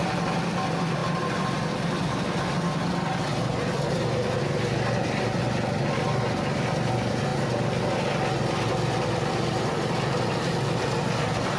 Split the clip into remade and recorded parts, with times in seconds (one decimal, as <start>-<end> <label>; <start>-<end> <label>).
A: 0.0-1.0 recorded; 1.0-1.7 remade; 1.7-11.6 recorded